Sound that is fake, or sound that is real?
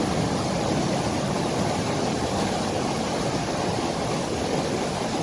real